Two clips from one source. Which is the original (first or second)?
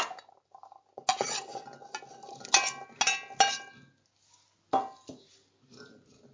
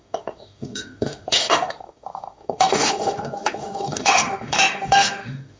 first